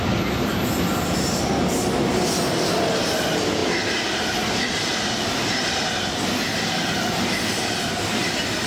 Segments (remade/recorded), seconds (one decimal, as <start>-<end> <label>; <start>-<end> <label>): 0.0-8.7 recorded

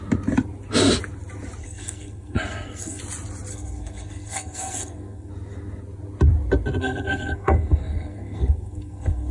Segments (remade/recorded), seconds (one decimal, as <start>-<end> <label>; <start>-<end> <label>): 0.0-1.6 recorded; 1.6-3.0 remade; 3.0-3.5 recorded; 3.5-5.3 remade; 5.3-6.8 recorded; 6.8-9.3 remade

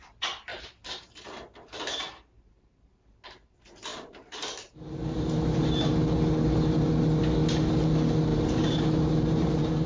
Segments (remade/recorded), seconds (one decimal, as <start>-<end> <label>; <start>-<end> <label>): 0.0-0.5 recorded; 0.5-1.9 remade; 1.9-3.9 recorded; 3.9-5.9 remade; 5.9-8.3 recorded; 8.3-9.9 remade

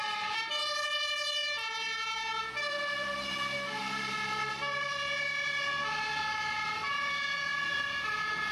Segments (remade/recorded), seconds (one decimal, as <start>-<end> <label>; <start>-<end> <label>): 0.0-1.4 remade; 1.4-2.6 recorded; 2.6-4.9 remade; 4.9-6.0 recorded; 6.0-8.5 remade